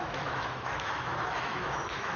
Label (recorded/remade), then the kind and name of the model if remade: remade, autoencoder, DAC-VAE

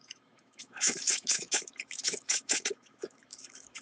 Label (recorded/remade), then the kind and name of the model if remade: remade, autoencoder, DAC-VAE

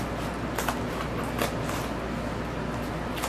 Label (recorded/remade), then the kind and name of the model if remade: recorded